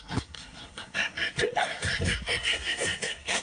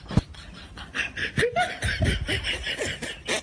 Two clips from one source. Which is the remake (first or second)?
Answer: first